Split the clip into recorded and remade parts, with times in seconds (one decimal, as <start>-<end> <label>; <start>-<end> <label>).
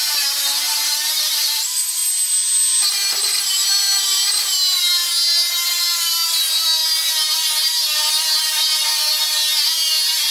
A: 0.0-2.0 remade; 2.0-3.1 recorded; 3.1-5.0 remade; 5.0-5.7 recorded; 5.7-10.3 remade